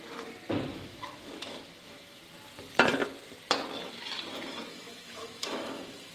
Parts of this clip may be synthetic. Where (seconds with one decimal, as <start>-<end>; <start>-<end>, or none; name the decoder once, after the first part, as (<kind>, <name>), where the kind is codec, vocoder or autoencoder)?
0.7-2.2 (autoencoder, DAC-VAE); 4.7-6.1